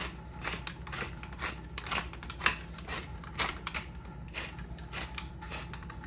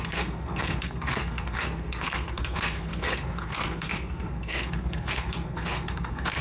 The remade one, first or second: second